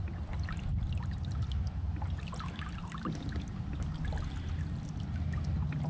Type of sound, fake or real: real